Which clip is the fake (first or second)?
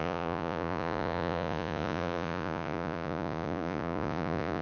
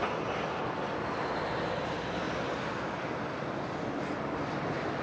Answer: first